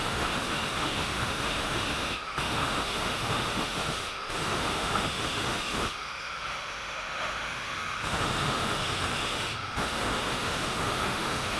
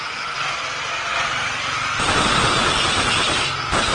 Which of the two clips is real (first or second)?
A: second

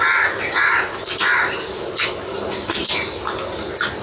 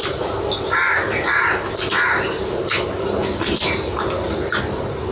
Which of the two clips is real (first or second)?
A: first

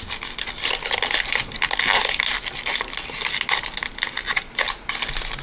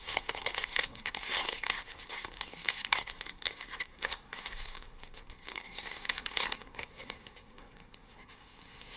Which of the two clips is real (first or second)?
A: first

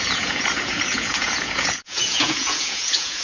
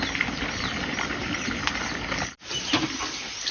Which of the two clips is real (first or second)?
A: second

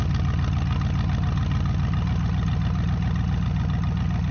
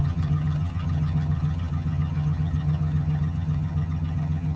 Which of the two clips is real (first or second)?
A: first